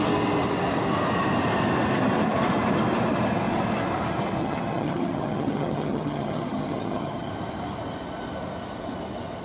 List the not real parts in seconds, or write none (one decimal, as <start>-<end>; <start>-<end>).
4.4-7.3